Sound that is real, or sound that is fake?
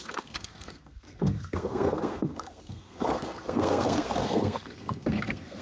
fake